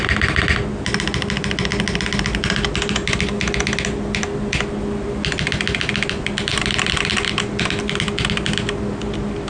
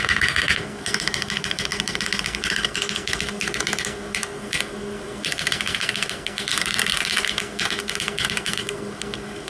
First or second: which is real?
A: first